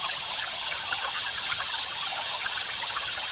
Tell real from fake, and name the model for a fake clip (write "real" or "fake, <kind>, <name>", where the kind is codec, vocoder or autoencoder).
fake, vocoder, HiFi-GAN